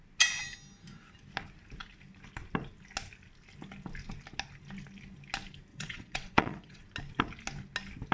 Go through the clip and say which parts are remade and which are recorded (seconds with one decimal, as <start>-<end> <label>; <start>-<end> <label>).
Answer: 0.0-5.7 recorded; 5.7-6.8 remade; 6.8-8.1 recorded